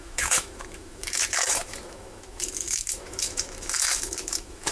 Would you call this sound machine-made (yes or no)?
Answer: yes